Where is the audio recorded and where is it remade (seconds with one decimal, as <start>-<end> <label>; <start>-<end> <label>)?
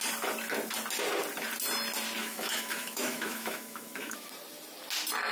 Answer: 0.0-2.2 recorded; 2.2-4.3 remade; 4.3-5.3 recorded